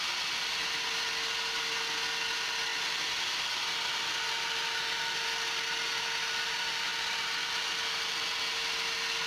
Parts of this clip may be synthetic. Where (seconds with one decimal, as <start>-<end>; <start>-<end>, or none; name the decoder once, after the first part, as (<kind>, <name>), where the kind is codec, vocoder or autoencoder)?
none